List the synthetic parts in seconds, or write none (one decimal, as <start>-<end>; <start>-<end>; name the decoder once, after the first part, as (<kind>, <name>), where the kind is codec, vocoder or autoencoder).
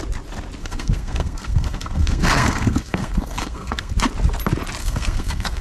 0.6-3.9 (codec, SNAC); 4.8-5.6